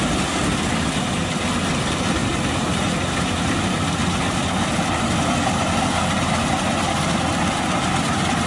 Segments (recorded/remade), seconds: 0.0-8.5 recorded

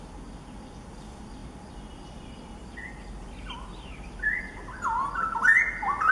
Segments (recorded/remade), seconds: 0.0-6.1 recorded

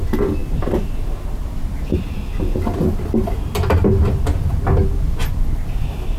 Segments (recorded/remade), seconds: 0.0-6.2 recorded

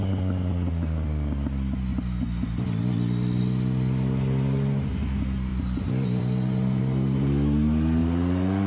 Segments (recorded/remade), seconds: 0.0-5.5 recorded; 5.5-6.8 remade; 6.8-8.0 recorded; 8.0-8.7 remade

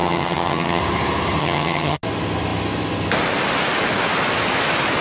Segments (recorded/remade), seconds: 0.0-0.8 remade; 0.8-1.4 recorded; 1.4-2.0 remade; 2.0-5.0 recorded

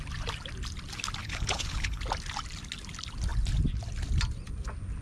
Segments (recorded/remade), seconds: 0.0-1.2 recorded; 1.2-2.0 remade; 2.0-5.0 recorded

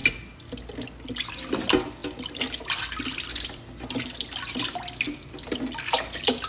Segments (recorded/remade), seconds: 0.0-6.5 recorded

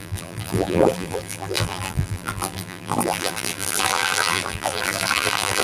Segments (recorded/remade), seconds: 0.0-5.6 remade